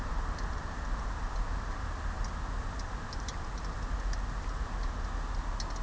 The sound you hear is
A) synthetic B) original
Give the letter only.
B